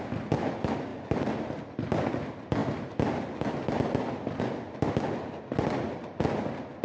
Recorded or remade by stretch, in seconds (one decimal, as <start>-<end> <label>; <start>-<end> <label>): 0.0-0.9 recorded; 0.9-1.6 remade; 1.6-6.8 recorded